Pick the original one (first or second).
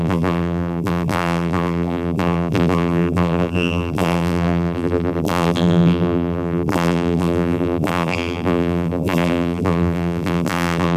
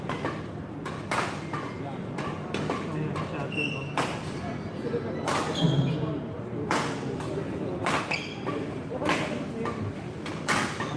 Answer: second